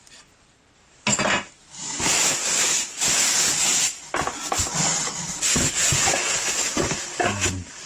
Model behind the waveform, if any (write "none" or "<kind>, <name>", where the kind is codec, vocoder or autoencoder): none